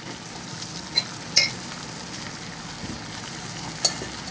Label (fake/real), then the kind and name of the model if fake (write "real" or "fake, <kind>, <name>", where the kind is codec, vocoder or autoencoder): real